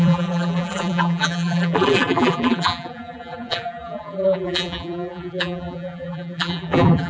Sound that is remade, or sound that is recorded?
remade